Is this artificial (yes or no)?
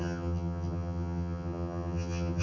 yes